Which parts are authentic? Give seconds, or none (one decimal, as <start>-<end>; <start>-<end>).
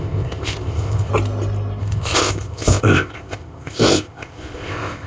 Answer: 1.1-1.8